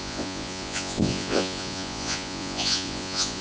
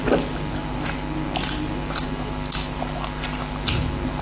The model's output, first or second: first